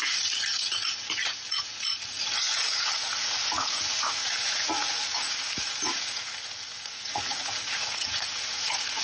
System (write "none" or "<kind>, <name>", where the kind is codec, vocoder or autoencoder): vocoder, Vocos